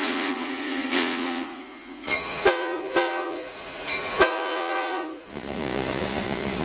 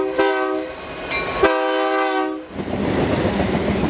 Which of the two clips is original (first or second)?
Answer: second